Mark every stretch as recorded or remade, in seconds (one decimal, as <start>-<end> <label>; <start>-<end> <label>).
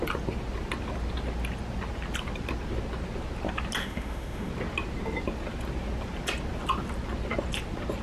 0.0-3.8 recorded; 3.8-4.5 remade; 4.5-8.0 recorded